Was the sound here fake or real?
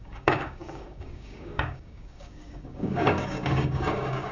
fake